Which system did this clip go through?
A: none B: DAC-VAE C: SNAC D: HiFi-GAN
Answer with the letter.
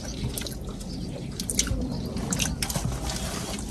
A